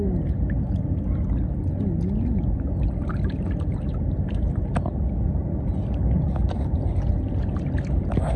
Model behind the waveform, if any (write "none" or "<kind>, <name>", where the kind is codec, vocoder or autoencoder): none